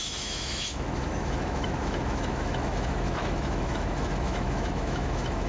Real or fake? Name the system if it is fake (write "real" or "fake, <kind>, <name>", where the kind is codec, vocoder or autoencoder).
fake, autoencoder, DAC-VAE